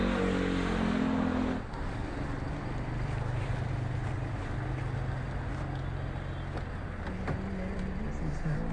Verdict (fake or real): real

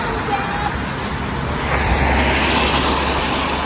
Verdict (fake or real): real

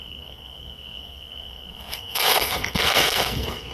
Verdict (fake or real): fake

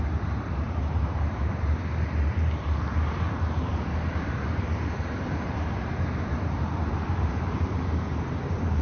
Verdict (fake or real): fake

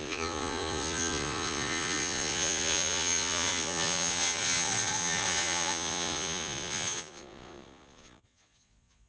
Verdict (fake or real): fake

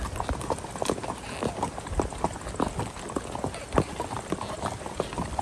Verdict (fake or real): real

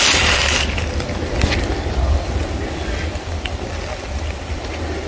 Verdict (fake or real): real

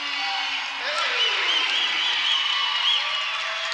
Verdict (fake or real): real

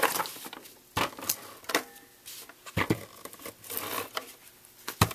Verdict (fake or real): real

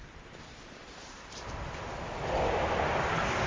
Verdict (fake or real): real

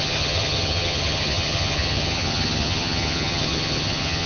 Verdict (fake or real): fake